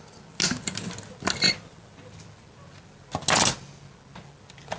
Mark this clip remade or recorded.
recorded